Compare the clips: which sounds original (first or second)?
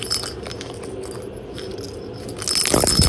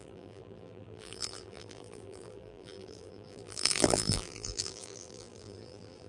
first